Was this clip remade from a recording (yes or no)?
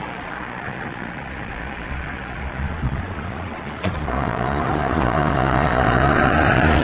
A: yes